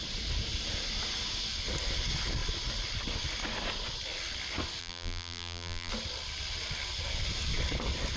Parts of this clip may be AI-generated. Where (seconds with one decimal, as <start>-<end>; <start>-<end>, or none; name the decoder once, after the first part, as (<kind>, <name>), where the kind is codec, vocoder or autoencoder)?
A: 4.8-5.9 (vocoder, BigVGAN v2)